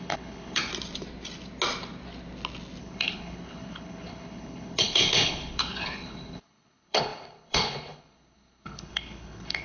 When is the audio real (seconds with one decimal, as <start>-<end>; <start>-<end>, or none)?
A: 0.7-2.8